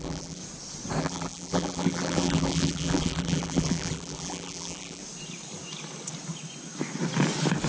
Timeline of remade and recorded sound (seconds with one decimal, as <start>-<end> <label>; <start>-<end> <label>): 0.0-0.4 remade; 0.4-1.0 recorded; 1.0-5.0 remade; 5.0-7.7 recorded